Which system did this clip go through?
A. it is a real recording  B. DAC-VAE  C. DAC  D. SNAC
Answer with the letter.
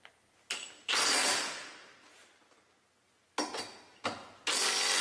A